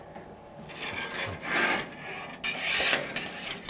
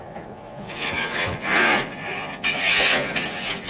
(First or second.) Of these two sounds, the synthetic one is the second